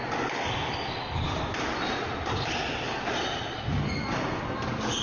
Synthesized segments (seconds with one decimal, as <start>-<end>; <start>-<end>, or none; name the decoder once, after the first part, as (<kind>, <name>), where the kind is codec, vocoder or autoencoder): none